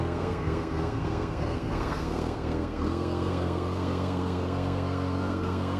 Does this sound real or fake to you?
fake